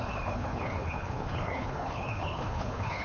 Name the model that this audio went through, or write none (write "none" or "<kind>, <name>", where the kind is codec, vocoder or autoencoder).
codec, HILCodec